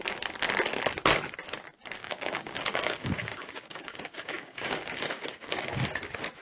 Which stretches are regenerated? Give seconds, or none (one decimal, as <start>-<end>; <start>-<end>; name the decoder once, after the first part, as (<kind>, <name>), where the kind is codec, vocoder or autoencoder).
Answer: 2.0-5.8 (codec, DAC)